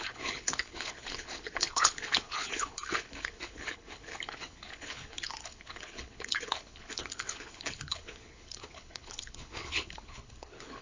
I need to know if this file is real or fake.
fake